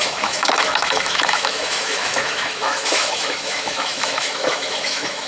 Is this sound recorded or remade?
remade